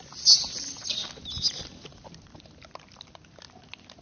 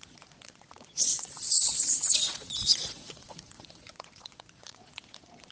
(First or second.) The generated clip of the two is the second